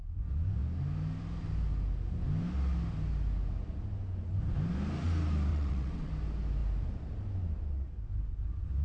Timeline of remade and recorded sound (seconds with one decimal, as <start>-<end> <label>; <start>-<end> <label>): 0.0-5.5 recorded; 5.5-6.1 remade; 6.1-8.8 recorded

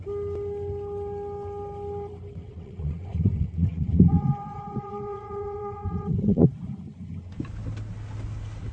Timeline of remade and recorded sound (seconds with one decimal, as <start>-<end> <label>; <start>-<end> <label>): 0.0-2.4 recorded; 2.4-6.5 remade; 6.5-8.7 recorded

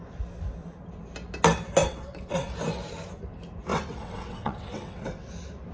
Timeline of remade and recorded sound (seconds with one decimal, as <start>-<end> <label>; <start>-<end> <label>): 0.0-1.8 recorded; 1.8-2.5 remade; 2.5-3.7 recorded; 3.7-5.3 remade; 5.3-5.7 recorded

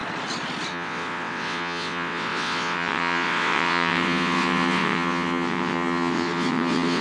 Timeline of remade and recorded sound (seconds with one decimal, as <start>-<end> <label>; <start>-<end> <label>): 0.0-0.7 recorded; 0.7-7.0 remade

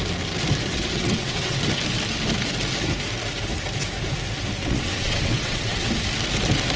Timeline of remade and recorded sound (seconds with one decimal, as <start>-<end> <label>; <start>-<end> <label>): 0.0-0.7 recorded; 0.7-1.6 remade; 1.6-4.6 recorded; 4.6-5.9 remade; 5.9-6.8 recorded

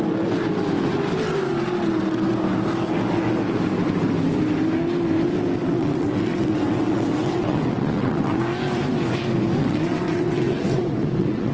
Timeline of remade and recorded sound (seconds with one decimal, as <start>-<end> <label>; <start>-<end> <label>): 0.0-5.6 recorded; 5.6-8.4 remade; 8.4-9.6 recorded; 9.6-11.5 remade

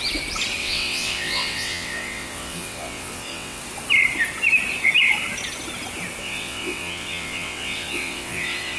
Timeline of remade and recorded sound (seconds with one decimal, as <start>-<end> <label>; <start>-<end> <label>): 0.0-0.6 recorded; 0.6-3.6 remade; 3.6-6.2 recorded; 6.2-8.8 remade